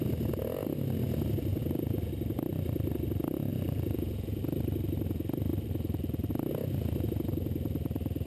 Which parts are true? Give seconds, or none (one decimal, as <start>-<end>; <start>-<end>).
0.0-1.5; 2.1-3.5; 4.4-8.3